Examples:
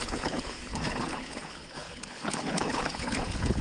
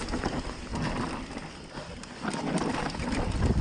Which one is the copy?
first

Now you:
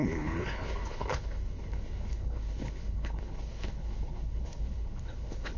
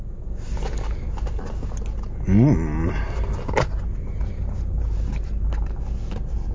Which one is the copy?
first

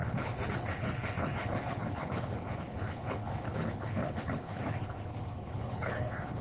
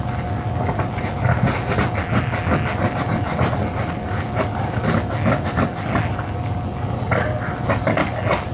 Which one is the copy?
first